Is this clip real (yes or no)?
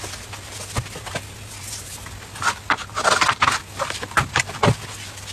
yes